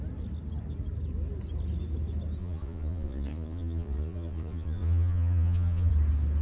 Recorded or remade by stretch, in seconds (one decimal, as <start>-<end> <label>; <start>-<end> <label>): 0.0-2.4 recorded; 2.4-5.9 remade; 5.9-6.4 recorded